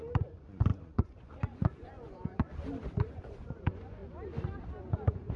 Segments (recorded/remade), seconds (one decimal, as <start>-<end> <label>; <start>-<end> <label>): 0.0-2.5 remade; 2.5-3.0 recorded; 3.0-4.0 remade; 4.0-4.8 recorded; 4.8-5.4 remade